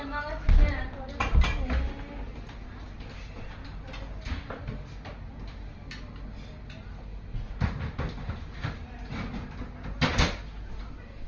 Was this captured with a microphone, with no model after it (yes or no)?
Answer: yes